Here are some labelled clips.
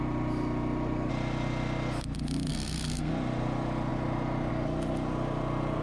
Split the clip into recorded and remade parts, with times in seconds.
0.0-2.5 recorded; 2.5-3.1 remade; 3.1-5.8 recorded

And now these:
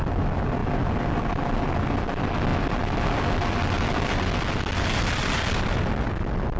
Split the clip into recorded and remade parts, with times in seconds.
0.0-6.6 recorded